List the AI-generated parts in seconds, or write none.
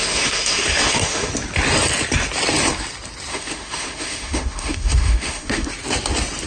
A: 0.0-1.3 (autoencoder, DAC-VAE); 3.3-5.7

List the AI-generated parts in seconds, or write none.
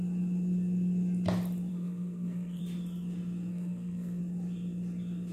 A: 1.7-2.6 (codec, SNAC); 3.5-4.2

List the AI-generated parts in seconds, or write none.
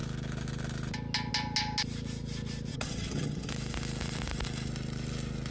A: 2.7-3.5 (vocoder, HiFi-GAN)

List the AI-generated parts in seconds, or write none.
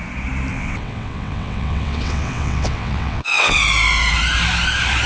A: 0.5-3.6 (vocoder, WaveNeXt)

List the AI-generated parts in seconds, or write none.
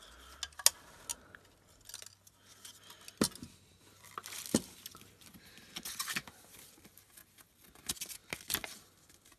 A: none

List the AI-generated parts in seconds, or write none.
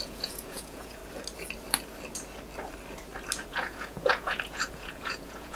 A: 0.0-1.0 (vocoder, Vocos); 3.5-5.6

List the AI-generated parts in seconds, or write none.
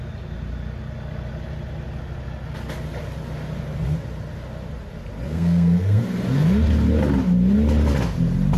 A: 5.3-6.0 (codec, SNAC)